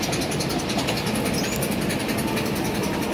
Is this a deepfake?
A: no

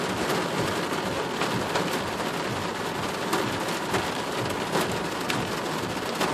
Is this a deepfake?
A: no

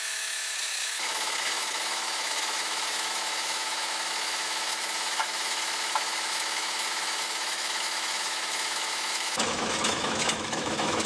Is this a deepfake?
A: yes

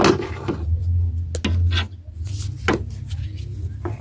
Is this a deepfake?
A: no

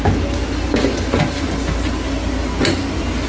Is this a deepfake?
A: no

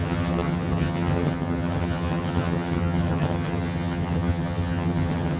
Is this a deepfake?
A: yes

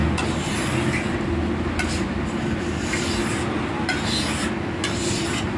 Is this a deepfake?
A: no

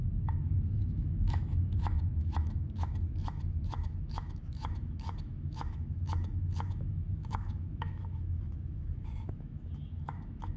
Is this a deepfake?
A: yes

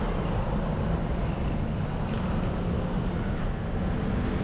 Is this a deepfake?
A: no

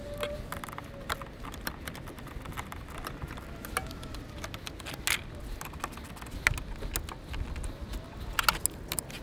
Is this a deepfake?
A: no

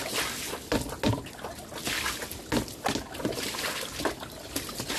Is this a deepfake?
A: no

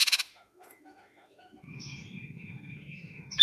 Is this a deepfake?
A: yes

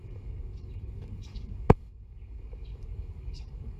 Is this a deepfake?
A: yes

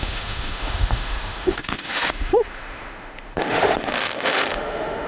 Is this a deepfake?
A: yes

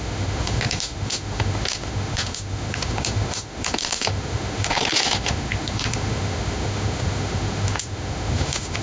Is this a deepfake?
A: yes